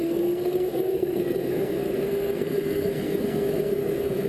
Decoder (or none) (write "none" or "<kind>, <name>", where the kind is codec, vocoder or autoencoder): codec, SNAC